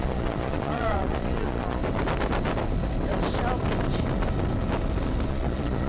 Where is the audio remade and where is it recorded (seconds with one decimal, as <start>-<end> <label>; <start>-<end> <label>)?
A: 0.0-1.8 remade; 1.8-5.3 recorded; 5.3-5.9 remade